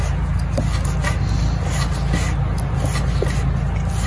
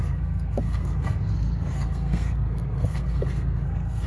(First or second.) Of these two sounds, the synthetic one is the second